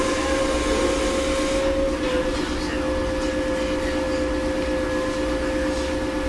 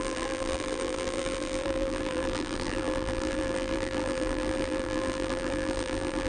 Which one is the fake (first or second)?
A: second